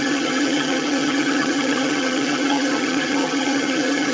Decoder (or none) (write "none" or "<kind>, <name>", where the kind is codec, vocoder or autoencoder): vocoder, HiFi-GAN